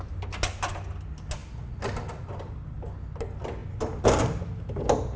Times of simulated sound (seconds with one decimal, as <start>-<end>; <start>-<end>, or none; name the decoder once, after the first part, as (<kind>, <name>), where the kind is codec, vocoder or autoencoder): none